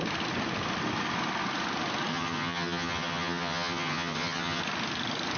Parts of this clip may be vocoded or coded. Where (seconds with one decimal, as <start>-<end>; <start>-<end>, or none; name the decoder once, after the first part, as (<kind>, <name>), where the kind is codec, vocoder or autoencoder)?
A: 2.1-4.6 (vocoder, HiFi-GAN)